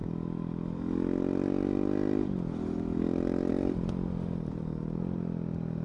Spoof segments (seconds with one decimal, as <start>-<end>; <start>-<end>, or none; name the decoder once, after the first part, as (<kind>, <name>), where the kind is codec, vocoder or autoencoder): none

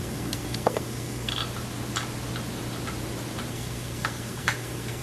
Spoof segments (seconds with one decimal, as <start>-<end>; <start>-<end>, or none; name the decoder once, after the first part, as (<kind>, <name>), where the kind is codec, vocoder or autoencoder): 0.0-1.3 (codec, SNAC); 3.5-5.0